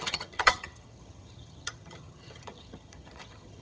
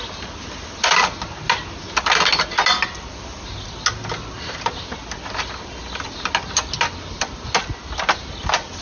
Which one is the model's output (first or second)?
first